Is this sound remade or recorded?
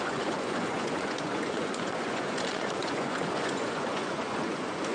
remade